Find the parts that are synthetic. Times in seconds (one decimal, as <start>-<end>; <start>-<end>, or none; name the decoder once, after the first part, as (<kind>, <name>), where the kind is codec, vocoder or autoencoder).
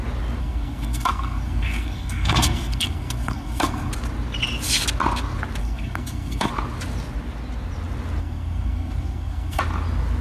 0.4-3.9 (codec, SNAC); 5.6-6.5; 8.2-9.6